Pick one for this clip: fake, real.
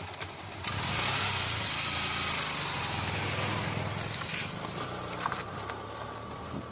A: real